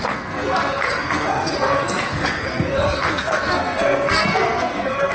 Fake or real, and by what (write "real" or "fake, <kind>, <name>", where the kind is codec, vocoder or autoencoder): fake, codec, SNAC